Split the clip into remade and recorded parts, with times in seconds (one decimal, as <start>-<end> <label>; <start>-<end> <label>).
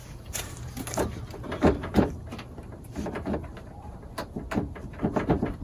0.0-1.2 remade; 1.2-1.8 recorded; 1.8-5.6 remade